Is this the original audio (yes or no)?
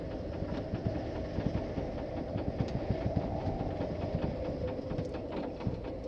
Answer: yes